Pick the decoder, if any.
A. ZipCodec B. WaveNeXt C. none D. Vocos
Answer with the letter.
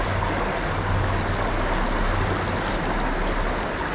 C